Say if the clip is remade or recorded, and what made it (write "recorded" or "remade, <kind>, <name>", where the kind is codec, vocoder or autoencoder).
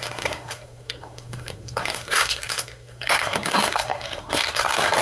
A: remade, codec, SNAC